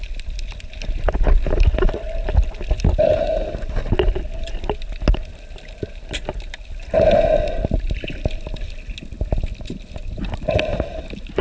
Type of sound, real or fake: real